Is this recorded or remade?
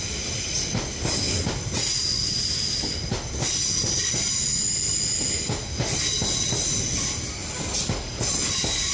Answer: recorded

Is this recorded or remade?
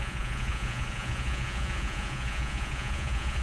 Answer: remade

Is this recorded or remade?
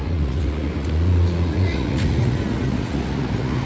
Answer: remade